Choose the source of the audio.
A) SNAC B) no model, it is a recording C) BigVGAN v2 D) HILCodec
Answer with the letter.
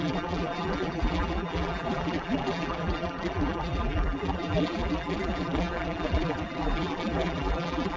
C